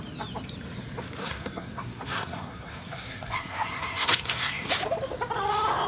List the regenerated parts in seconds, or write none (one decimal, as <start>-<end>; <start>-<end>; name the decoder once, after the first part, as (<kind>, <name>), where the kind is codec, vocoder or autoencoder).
1.2-4.7 (codec, SNAC)